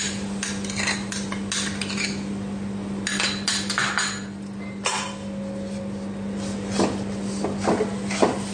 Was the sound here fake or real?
real